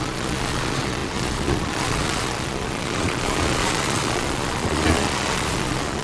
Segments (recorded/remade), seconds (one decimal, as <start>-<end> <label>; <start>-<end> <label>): 0.0-6.0 remade